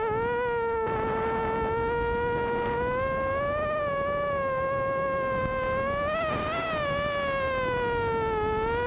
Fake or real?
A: real